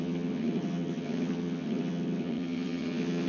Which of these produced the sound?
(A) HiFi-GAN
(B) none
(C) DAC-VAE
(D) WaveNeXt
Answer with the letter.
A